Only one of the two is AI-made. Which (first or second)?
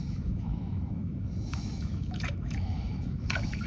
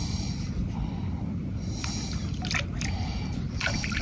first